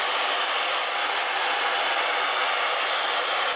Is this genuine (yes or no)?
yes